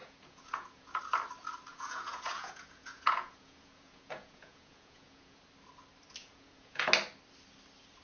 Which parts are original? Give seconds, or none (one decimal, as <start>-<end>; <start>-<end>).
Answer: 1.0-1.7; 5.4-6.2; 6.9-8.0